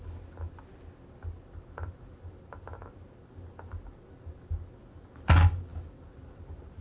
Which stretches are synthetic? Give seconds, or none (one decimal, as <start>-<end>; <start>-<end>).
none